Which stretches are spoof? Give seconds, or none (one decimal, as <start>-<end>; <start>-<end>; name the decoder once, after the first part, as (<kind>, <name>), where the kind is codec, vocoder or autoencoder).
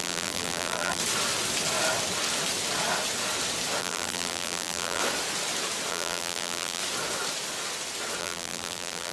0.0-1.0 (vocoder, BigVGAN v2); 3.8-5.0; 5.9-6.8; 8.2-9.1